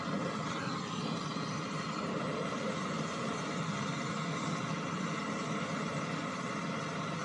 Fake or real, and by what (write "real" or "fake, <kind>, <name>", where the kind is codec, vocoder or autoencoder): real